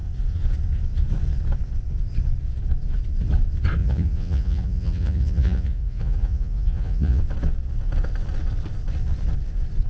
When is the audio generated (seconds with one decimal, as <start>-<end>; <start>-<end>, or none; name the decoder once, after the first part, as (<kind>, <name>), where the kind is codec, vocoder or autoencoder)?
3.8-7.2 (vocoder, Vocos)

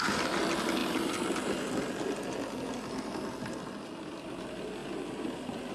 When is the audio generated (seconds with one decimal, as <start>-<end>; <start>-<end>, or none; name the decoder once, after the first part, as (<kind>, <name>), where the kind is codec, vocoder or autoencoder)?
none

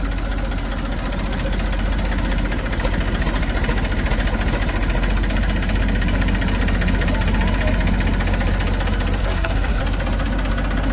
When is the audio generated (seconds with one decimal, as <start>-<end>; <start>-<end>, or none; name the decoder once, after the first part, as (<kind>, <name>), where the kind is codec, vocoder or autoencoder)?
9.2-9.8 (codec, SNAC)

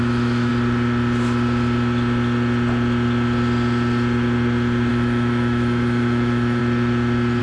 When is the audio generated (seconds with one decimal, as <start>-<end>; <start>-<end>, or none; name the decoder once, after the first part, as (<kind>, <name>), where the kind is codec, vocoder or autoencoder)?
0.0-0.5 (autoencoder, DAC-VAE); 4.9-6.6

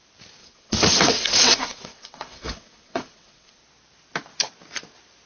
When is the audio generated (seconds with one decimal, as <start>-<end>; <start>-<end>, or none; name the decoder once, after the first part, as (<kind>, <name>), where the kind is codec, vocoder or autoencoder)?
0.4-3.6 (vocoder, WaveNeXt)

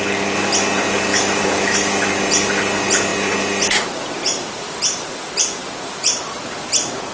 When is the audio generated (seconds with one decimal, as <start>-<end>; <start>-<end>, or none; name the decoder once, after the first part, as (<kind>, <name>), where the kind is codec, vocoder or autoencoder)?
1.1-2.1 (autoencoder, DAC-VAE)

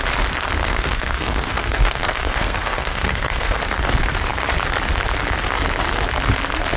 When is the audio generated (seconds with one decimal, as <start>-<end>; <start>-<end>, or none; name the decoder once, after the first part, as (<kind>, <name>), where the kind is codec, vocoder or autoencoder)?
0.6-3.6 (codec, SNAC)

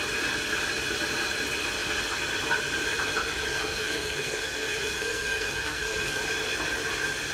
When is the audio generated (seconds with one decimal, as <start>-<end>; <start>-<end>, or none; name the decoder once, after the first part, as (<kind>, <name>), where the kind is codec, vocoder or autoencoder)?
3.5-6.2 (codec, SNAC)